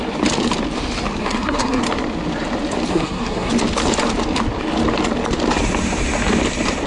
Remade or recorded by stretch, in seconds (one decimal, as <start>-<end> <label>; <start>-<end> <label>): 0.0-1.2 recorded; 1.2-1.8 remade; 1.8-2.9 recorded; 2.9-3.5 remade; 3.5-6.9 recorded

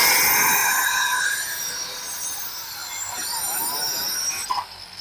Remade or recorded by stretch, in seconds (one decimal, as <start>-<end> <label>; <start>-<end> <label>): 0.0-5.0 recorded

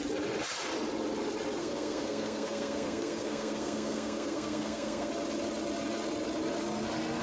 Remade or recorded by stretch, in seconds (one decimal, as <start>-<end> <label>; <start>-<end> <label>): 0.0-1.6 recorded; 1.6-5.1 remade; 5.1-7.2 recorded